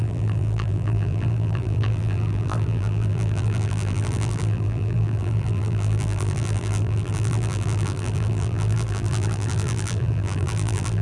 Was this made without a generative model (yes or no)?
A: no